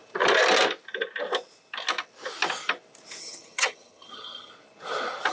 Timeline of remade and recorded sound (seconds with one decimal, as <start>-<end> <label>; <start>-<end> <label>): 0.0-3.2 recorded; 3.2-4.5 remade; 4.5-5.3 recorded